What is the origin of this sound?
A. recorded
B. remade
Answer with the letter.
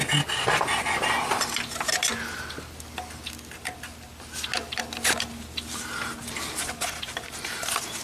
A